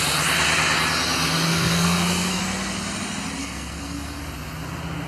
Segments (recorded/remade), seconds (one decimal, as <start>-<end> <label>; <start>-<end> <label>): 0.0-1.5 recorded; 1.5-2.4 remade; 2.4-3.4 recorded; 3.4-4.2 remade; 4.2-5.1 recorded